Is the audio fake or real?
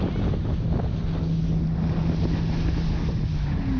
real